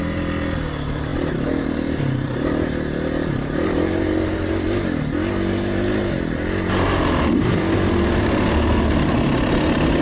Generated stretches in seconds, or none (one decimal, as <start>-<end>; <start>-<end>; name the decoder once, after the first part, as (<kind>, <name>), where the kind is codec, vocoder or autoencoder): 1.1-4.5 (vocoder, BigVGAN v2)